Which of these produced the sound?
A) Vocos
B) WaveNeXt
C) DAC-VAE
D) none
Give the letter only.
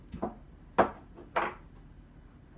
D